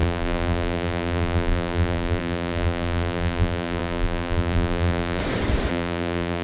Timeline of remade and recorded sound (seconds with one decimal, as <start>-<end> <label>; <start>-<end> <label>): 0.0-5.2 remade; 5.2-5.7 recorded; 5.7-6.4 remade